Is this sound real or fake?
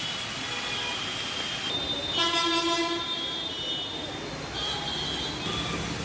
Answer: real